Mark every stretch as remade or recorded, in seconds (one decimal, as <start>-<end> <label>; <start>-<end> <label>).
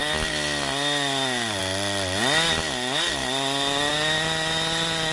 0.0-5.1 recorded